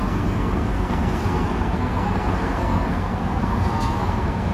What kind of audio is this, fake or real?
fake